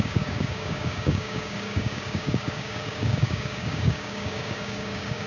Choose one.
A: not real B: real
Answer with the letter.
A